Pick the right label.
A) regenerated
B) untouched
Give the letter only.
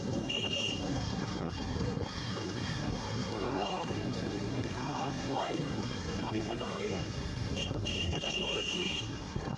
A